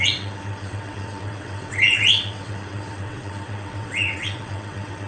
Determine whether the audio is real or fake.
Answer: fake